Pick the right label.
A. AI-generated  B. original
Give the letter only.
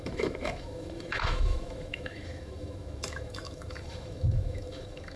A